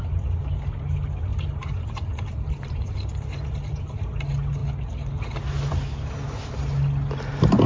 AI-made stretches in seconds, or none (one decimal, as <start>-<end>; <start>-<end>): 1.3-3.8